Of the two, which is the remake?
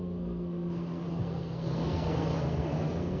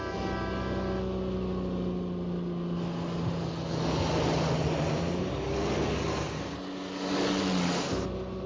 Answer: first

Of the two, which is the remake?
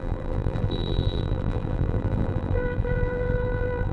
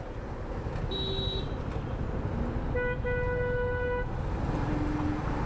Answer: first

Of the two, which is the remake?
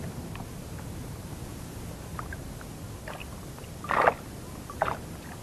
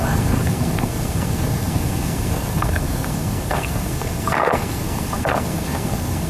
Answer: second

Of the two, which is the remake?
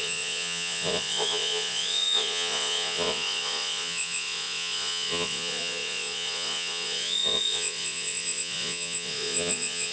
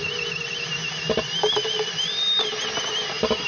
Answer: first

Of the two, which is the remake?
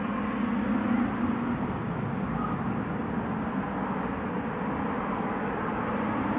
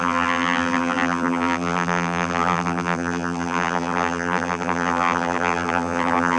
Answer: second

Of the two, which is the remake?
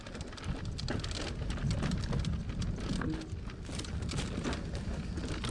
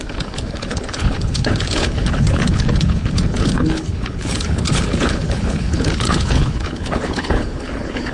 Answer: second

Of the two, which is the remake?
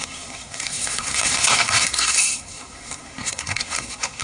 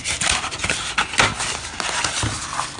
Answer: first